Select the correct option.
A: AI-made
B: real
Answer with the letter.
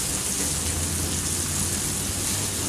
B